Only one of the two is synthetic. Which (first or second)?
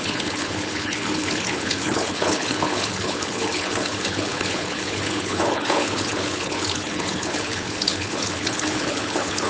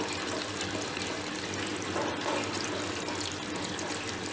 first